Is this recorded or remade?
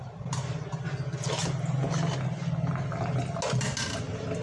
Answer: recorded